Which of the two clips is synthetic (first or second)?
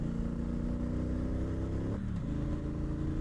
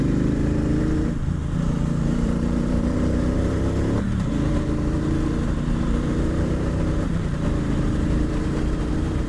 second